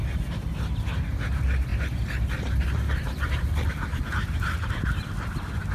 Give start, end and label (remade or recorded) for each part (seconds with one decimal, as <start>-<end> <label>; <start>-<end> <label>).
0.0-5.7 recorded